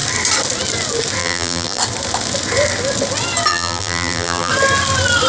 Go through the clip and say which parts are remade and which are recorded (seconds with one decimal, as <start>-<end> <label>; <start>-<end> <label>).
0.0-1.2 recorded; 1.2-1.8 remade; 1.8-3.5 recorded; 3.5-4.5 remade; 4.5-5.3 recorded